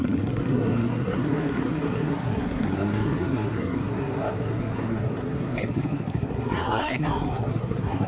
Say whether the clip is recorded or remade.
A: remade